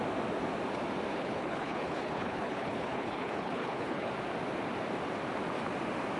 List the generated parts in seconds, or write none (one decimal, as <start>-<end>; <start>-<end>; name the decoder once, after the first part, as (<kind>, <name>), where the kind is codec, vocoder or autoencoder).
1.1-4.1 (codec, HILCodec)